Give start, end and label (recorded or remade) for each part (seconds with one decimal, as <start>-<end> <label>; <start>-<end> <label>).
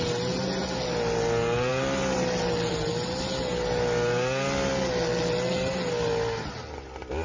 0.0-7.2 recorded